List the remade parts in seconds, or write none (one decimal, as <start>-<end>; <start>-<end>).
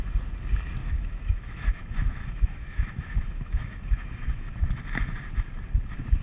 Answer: 0.8-4.5